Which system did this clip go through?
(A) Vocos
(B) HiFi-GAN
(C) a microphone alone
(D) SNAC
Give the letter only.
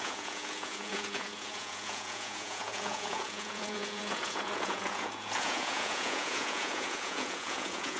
A